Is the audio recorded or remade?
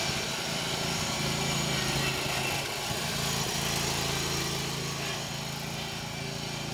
recorded